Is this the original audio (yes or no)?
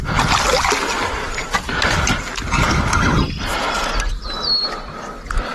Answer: yes